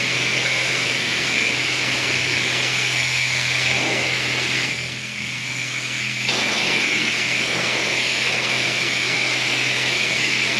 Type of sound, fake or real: fake